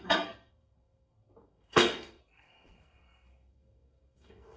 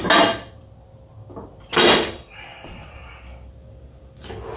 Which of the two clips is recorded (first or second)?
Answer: second